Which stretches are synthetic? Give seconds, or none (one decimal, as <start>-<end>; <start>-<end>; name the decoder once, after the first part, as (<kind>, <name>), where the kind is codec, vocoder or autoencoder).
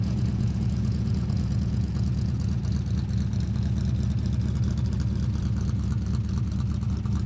0.0-2.6 (vocoder, Vocos)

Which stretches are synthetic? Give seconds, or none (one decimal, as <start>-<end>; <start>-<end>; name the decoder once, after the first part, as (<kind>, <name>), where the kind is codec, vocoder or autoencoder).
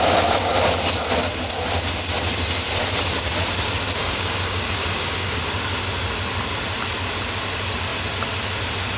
4.0-5.4 (codec, DAC)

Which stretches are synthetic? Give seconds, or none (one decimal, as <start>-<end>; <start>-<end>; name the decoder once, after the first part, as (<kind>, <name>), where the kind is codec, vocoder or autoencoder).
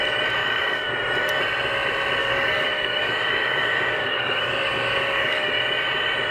0.4-0.9 (codec, DAC); 2.2-5.5